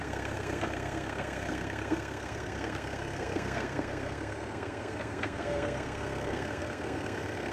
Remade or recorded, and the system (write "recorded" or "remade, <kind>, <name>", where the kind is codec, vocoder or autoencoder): remade, codec, SNAC